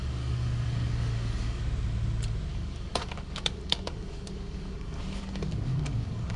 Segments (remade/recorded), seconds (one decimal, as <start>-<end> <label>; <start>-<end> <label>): 0.0-1.6 remade; 1.6-2.5 recorded; 2.5-6.4 remade